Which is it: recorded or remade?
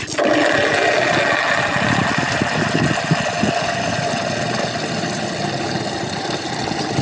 recorded